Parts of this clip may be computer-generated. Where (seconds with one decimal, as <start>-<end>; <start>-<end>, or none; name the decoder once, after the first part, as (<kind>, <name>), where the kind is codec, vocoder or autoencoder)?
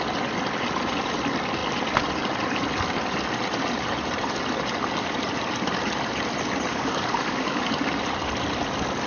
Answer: 6.7-7.7 (codec, DAC)